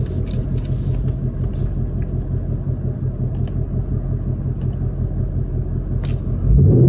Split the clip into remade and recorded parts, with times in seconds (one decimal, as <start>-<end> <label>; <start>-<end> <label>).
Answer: 0.0-6.9 recorded